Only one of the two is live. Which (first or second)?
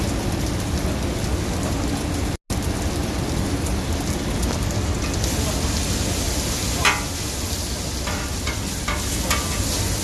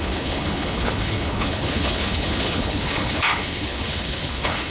first